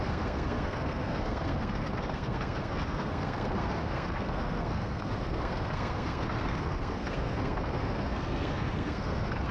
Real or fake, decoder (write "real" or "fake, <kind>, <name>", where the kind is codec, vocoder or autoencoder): fake, codec, SNAC